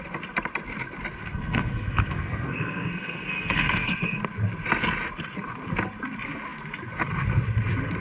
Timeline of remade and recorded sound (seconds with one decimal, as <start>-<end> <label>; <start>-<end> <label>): 0.0-1.2 recorded; 1.2-4.0 remade; 4.0-8.0 recorded